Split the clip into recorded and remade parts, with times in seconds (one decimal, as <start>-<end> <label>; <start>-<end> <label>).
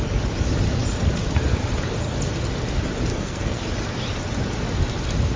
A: 0.0-3.1 recorded; 3.1-3.6 remade; 3.6-5.4 recorded